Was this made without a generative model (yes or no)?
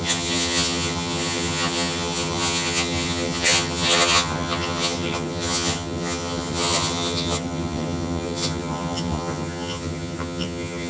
no